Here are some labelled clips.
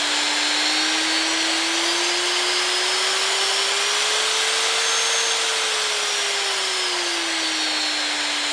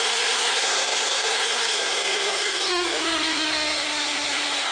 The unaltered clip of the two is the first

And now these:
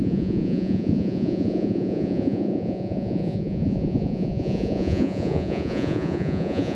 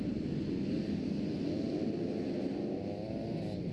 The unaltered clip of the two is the second